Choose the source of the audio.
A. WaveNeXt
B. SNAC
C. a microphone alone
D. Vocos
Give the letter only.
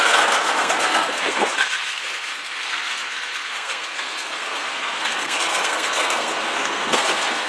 B